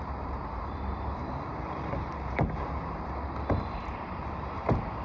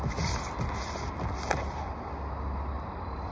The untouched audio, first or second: second